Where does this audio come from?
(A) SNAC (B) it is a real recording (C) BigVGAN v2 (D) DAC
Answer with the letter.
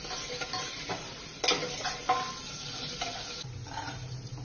B